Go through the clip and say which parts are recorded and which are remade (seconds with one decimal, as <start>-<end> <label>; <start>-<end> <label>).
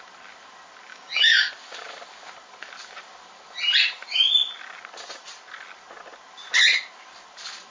0.0-0.9 recorded; 0.9-1.5 remade; 1.5-7.7 recorded